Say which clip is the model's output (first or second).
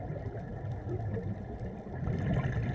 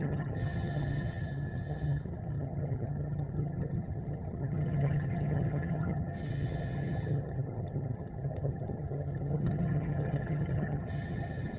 second